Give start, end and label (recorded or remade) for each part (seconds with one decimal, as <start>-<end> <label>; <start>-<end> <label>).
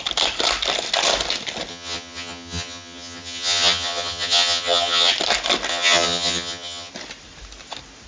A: 0.0-1.7 recorded; 1.7-5.1 remade; 5.1-5.7 recorded; 5.7-6.9 remade; 6.9-8.1 recorded